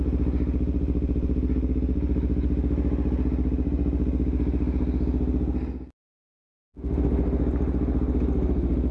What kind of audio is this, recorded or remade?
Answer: recorded